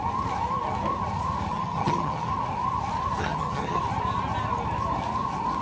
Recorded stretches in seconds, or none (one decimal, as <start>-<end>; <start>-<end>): 0.0-1.5; 2.3-3.2; 3.8-5.6